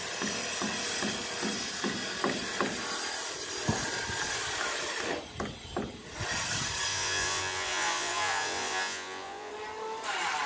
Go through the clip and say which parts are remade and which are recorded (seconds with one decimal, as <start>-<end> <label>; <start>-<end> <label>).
0.0-6.9 recorded; 6.9-9.5 remade; 9.5-10.5 recorded